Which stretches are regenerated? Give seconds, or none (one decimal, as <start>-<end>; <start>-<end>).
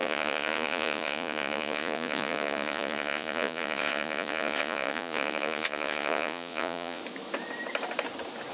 0.0-7.0